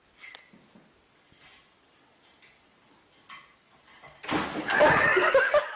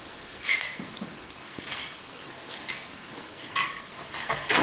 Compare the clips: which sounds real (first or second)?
first